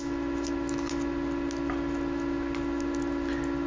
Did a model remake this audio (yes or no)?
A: no